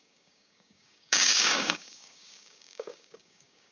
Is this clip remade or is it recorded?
remade